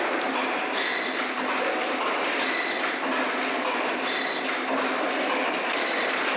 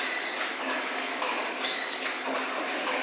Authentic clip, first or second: first